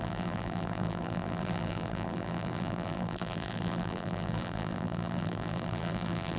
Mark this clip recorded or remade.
remade